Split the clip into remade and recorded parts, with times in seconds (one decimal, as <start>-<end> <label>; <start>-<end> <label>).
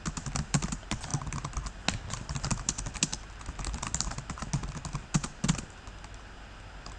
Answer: 0.0-7.0 recorded